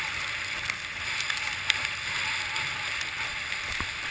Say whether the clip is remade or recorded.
recorded